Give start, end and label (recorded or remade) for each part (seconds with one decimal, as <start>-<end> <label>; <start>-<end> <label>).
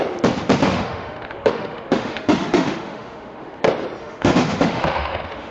0.0-0.6 recorded; 0.6-3.6 remade; 3.6-4.0 recorded; 4.0-5.5 remade